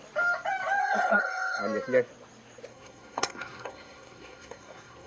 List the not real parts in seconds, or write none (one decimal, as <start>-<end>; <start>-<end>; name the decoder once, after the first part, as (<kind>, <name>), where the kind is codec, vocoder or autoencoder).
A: 0.8-1.6 (codec, SNAC); 2.7-5.1